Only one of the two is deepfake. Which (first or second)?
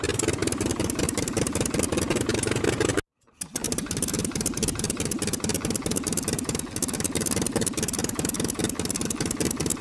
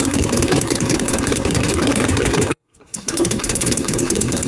second